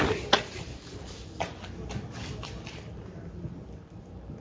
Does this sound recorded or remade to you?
recorded